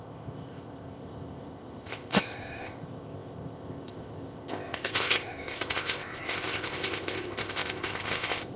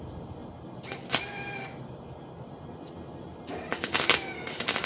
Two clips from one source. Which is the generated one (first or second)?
first